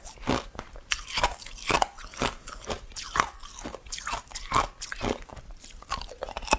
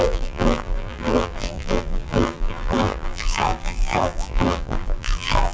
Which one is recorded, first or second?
first